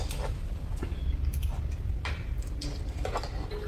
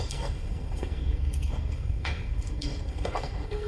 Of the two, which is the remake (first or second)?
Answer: second